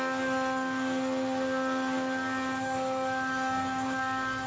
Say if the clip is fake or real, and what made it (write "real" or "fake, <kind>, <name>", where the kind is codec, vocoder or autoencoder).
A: real